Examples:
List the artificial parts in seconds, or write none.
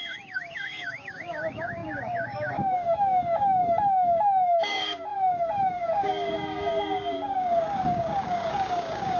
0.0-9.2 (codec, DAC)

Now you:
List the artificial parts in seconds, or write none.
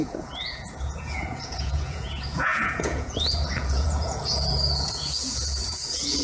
0.0-6.2 (vocoder, Vocos)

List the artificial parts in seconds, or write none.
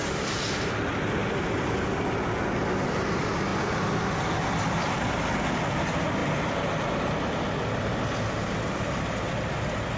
0.0-1.8 (vocoder, BigVGAN v2); 3.5-5.1